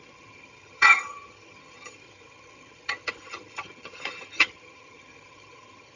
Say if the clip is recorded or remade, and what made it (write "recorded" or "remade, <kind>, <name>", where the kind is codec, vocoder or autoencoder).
remade, vocoder, HiFi-GAN